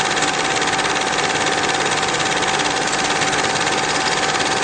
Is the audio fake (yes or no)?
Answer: no